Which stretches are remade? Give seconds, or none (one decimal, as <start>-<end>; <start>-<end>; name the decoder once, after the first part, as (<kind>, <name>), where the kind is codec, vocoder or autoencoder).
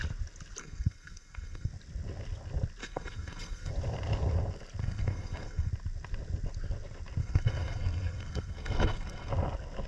0.6-1.7 (codec, SNAC); 2.8-3.7; 4.8-5.7; 7.2-9.3